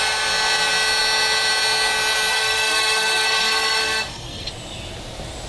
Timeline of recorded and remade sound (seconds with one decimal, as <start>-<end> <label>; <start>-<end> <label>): 0.0-2.3 recorded; 2.3-4.5 remade; 4.5-5.5 recorded